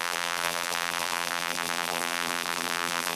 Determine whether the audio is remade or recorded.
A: remade